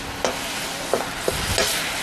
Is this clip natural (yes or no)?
yes